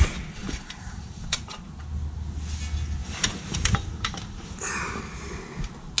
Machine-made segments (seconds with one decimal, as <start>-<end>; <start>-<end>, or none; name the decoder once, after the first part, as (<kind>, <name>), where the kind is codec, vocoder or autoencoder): 0.4-1.7 (vocoder, BigVGAN v2); 3.0-5.0